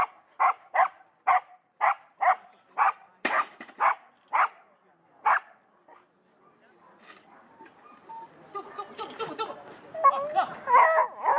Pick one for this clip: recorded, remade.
recorded